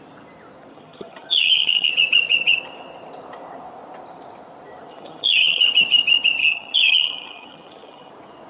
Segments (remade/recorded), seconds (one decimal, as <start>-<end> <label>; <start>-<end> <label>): 0.0-0.7 recorded; 0.7-1.9 remade; 1.9-4.9 recorded; 4.9-5.6 remade; 5.6-6.4 recorded; 6.4-8.1 remade; 8.1-8.5 recorded